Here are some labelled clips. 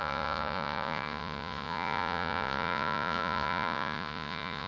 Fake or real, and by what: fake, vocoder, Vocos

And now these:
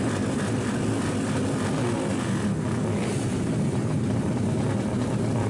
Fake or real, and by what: real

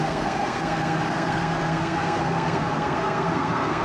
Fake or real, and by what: fake, codec, SNAC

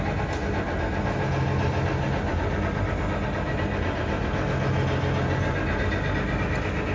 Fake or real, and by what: real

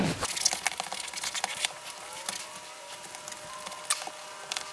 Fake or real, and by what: real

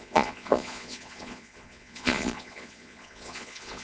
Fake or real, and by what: fake, vocoder, Vocos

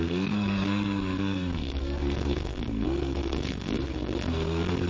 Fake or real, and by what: fake, codec, SNAC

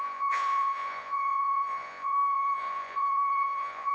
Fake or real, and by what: fake, vocoder, Vocos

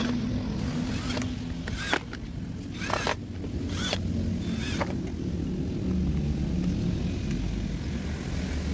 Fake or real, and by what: real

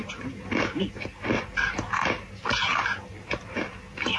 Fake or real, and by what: real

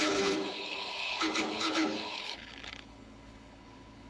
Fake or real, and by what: fake, codec, HILCodec